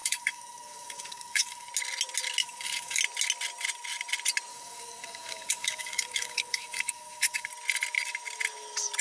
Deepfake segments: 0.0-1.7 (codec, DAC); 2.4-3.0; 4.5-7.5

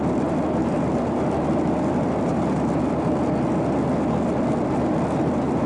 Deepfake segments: 0.0-3.2 (vocoder, BigVGAN v2); 4.6-5.7

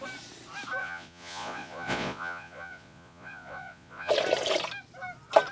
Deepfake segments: 0.8-4.1 (vocoder, Vocos)

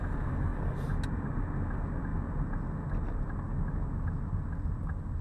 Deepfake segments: none

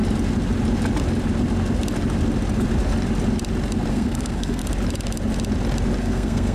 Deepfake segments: 3.9-4.6 (codec, SNAC); 6.0-6.5

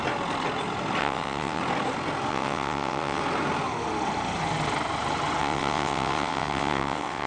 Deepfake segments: 1.0-1.6 (vocoder, WaveNeXt); 2.3-3.2; 5.4-7.3